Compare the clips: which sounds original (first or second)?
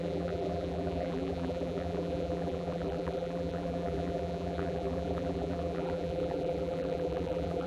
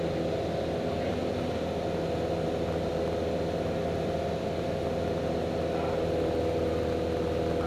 second